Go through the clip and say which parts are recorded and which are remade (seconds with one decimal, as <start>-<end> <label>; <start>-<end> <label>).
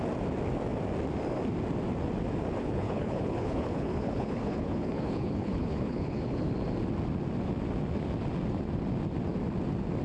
0.0-2.6 recorded; 2.6-6.5 remade; 6.5-10.0 recorded